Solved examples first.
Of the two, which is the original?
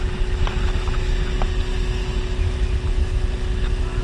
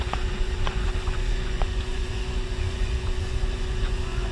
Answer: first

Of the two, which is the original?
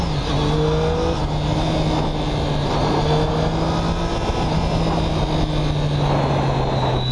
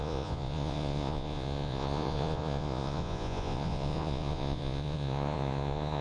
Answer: first